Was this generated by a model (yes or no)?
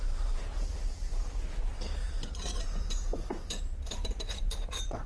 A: yes